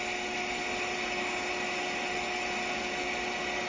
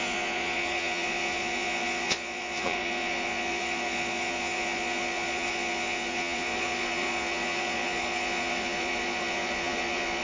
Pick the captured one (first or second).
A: first